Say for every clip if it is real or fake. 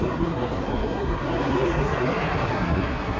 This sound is fake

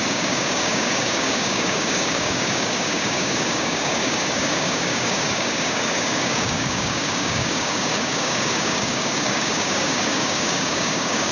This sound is fake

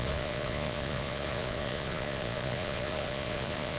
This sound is fake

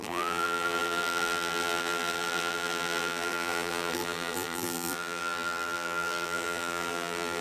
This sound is fake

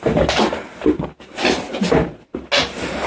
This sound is real